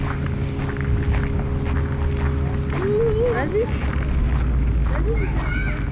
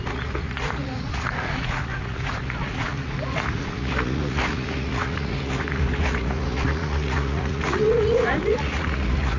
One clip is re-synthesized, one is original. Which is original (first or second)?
first